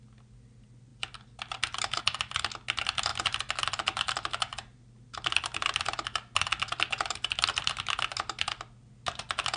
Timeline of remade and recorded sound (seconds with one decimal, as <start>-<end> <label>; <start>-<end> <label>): 0.0-9.6 recorded